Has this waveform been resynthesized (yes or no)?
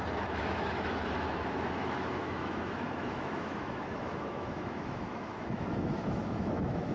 yes